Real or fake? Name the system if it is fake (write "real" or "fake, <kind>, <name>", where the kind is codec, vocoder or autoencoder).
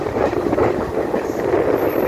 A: real